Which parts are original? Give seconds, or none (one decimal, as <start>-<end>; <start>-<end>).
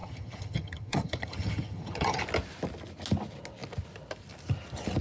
2.2-5.0